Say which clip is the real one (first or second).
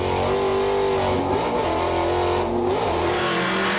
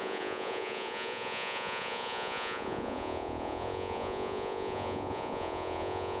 first